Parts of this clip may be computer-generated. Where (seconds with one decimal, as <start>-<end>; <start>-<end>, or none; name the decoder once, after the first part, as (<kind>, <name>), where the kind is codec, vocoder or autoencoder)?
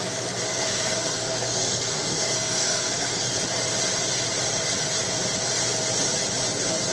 0.5-3.4 (codec, SNAC)